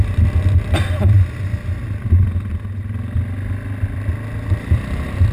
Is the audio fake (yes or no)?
no